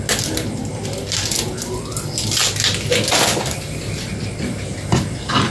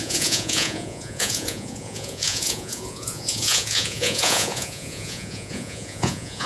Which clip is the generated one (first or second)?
second